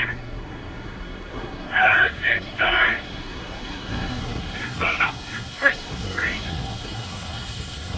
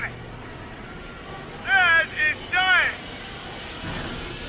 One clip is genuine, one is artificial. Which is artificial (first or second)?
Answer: first